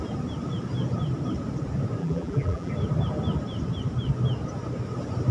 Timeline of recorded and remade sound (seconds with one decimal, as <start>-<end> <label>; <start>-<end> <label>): 0.0-2.0 recorded; 2.0-2.7 remade; 2.7-5.3 recorded